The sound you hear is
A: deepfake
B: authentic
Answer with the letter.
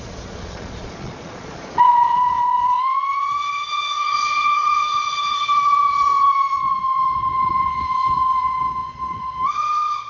A